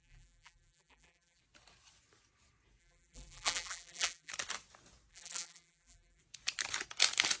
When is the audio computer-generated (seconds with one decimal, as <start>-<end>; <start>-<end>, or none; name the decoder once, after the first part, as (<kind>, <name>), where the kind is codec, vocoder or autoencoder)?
0.0-1.4 (vocoder, BigVGAN v2); 2.8-4.3; 5.1-6.2